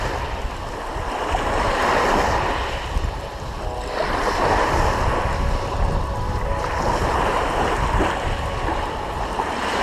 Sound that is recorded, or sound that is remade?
recorded